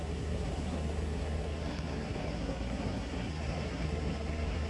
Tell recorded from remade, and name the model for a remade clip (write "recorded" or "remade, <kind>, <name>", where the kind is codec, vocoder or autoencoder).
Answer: remade, codec, SNAC